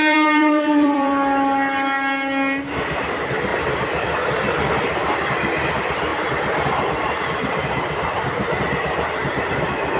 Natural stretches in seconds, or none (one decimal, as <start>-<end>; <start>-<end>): 1.1-3.5; 4.3-6.1; 8.2-10.0